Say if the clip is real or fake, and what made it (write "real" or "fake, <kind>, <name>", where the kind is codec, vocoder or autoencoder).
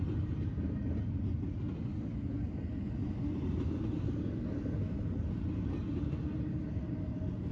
real